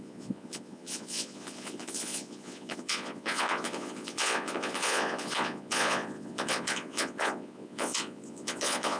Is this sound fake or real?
fake